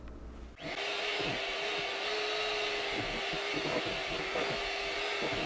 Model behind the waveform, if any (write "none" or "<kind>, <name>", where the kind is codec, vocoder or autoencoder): none